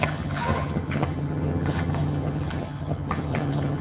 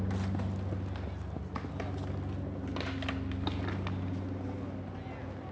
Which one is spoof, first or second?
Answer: first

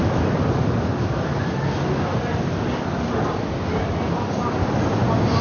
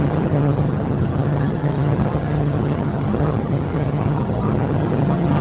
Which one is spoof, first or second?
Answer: second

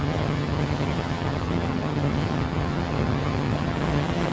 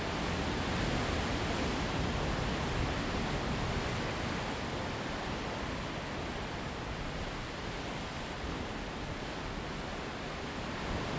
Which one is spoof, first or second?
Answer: first